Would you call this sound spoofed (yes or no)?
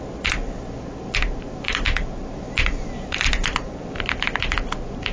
no